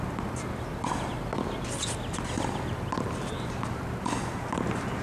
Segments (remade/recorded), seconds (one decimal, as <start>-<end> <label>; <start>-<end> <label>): 0.0-5.0 recorded